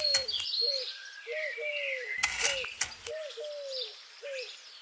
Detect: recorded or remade recorded